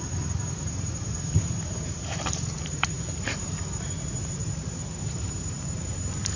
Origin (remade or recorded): remade